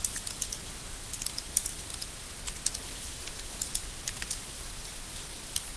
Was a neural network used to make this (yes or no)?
no